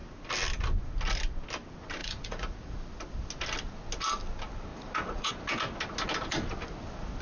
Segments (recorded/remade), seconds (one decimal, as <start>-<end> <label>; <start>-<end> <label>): 0.0-2.0 recorded; 2.0-2.8 remade; 2.8-4.7 recorded; 4.7-5.3 remade; 5.3-7.2 recorded